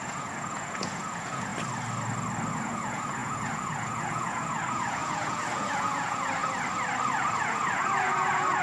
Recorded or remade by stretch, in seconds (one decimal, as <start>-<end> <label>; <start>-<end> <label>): 0.0-1.5 remade; 1.5-2.5 recorded; 2.5-6.4 remade; 6.4-7.2 recorded; 7.2-8.6 remade